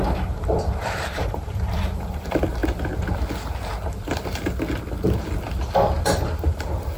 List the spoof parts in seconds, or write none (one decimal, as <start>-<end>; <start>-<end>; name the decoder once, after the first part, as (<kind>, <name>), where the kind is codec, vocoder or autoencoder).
0.0-2.6 (vocoder, BigVGAN v2)